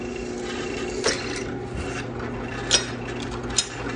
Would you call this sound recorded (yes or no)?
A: yes